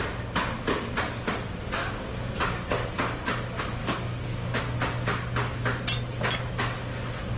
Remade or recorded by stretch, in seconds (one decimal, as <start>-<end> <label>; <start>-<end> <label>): 0.0-1.8 recorded; 1.8-2.4 remade; 2.4-3.8 recorded; 3.8-4.6 remade; 4.6-7.4 recorded